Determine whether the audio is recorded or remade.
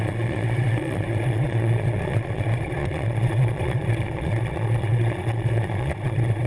remade